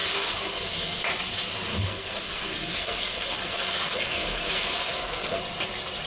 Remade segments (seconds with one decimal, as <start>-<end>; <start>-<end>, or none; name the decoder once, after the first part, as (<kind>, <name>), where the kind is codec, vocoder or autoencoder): 0.0-1.0 (codec, SNAC); 1.7-5.4